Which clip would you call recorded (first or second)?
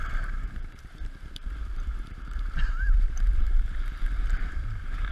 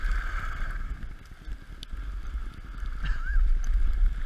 second